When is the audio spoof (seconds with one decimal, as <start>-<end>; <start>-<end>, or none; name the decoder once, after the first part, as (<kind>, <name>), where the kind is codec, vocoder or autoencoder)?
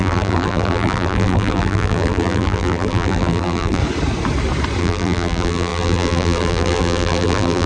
0.0-3.8 (vocoder, BigVGAN v2); 4.8-7.7